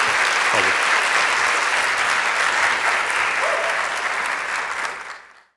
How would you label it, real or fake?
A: real